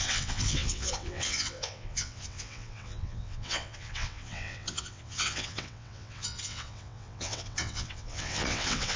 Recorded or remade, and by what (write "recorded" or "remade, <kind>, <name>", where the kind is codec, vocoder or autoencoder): remade, vocoder, WaveNeXt